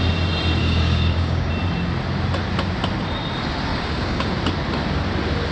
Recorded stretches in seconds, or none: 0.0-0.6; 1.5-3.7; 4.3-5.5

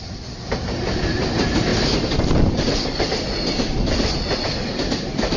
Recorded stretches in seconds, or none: 0.0-5.4